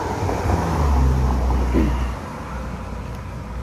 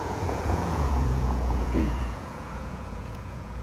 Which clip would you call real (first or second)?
first